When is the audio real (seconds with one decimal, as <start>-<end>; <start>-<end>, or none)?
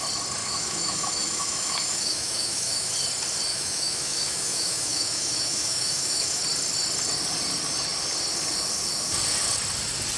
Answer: 0.0-0.4; 2.9-3.5; 6.4-10.2